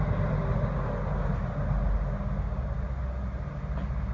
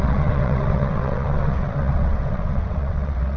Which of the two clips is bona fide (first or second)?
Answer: first